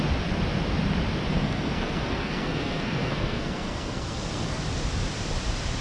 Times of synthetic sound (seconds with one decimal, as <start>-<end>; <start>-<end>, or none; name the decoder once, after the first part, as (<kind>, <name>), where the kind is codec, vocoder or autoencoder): 1.3-4.6 (codec, SNAC)